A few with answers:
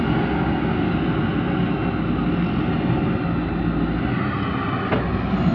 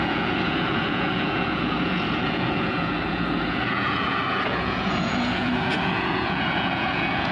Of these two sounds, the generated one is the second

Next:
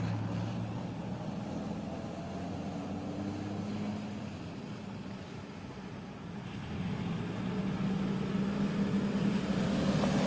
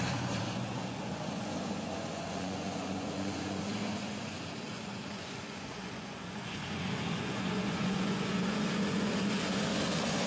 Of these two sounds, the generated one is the second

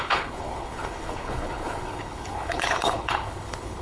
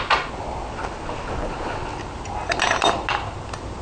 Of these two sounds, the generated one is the first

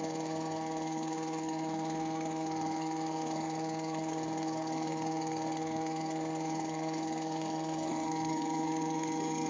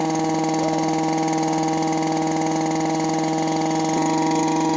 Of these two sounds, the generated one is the first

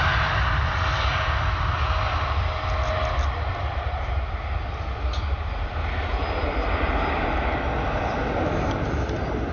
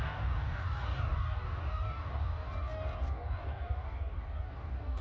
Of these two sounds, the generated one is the second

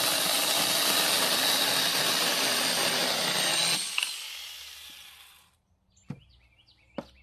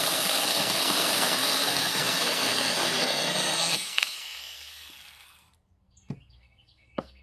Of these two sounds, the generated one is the second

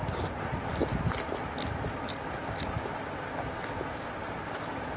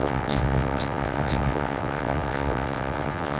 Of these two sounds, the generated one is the second